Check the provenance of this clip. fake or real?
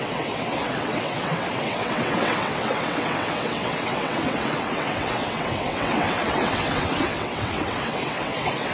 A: fake